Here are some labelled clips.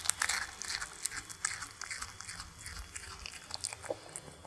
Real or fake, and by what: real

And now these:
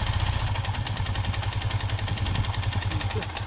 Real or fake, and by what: real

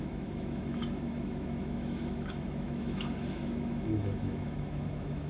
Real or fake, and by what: fake, autoencoder, DAC-VAE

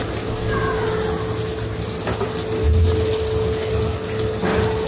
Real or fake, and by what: real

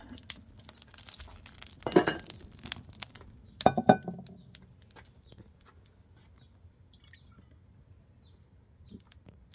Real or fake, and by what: real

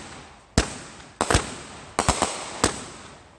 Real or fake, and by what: real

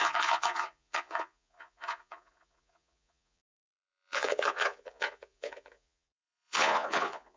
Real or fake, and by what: fake, vocoder, Vocos